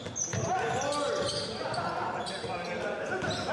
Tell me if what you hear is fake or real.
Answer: real